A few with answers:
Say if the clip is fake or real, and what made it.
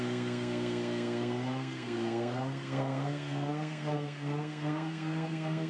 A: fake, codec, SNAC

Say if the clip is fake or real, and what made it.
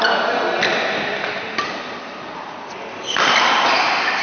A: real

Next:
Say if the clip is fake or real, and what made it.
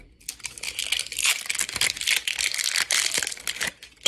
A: real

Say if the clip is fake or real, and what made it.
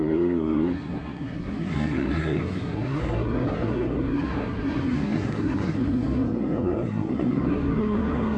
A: fake, codec, SNAC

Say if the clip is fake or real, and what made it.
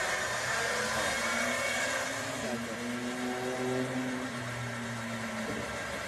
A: real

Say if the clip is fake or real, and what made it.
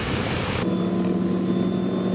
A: real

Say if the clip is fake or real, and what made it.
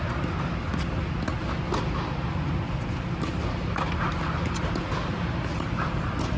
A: real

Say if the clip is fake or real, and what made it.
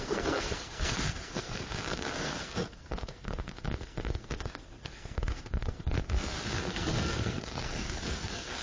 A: fake, codec, SNAC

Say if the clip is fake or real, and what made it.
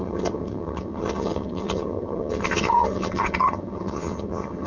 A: fake, vocoder, HiFi-GAN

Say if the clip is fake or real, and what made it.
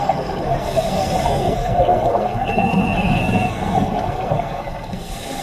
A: fake, codec, SNAC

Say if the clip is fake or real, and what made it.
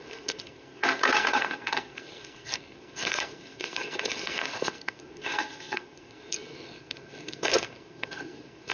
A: fake, codec, SNAC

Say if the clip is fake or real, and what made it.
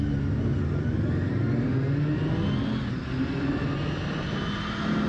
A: real